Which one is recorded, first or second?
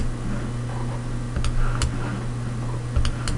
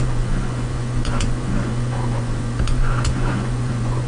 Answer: first